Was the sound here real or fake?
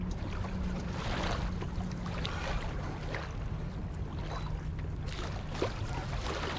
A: real